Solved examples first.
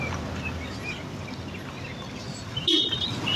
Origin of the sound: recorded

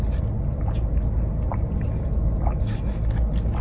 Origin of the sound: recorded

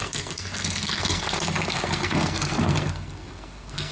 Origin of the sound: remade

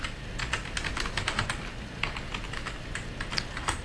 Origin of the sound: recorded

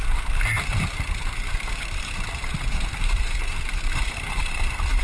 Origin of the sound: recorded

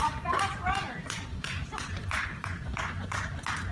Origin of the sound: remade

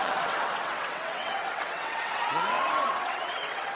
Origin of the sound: remade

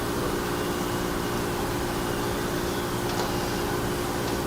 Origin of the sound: recorded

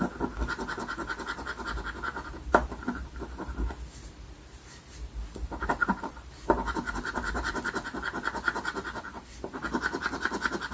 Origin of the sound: recorded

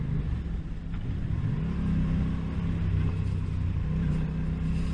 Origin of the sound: recorded